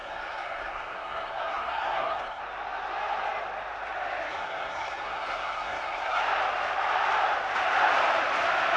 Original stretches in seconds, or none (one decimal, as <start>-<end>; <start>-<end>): 2.4-4.3; 6.2-8.8